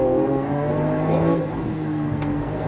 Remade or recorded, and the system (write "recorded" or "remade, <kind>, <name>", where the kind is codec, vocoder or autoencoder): remade, codec, SNAC